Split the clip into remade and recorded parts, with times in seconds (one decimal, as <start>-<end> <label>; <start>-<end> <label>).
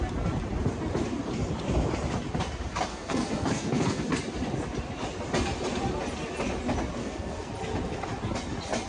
0.0-2.9 recorded; 2.9-4.0 remade; 4.0-7.0 recorded; 7.0-7.5 remade; 7.5-8.9 recorded